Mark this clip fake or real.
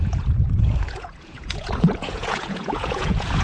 fake